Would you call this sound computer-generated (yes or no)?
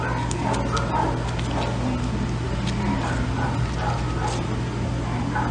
no